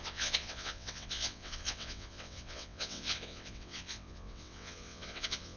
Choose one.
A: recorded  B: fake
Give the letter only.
B